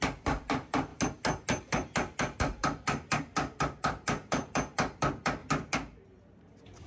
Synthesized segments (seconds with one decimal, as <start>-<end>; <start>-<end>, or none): 0.0-0.9; 2.4-5.4; 6.5-6.9